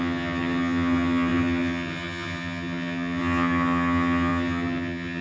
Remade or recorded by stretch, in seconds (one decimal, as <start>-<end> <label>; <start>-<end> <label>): 0.0-5.2 remade